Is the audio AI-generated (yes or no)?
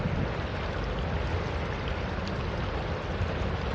no